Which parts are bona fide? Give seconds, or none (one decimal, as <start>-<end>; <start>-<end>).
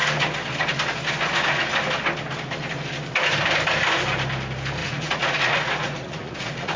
0.0-4.8